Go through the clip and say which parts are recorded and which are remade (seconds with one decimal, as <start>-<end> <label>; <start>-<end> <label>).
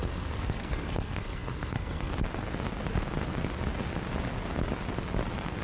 0.0-2.1 remade; 2.1-5.6 recorded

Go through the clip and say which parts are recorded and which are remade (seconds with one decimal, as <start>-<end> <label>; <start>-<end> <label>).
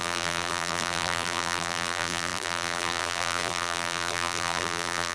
0.0-5.1 remade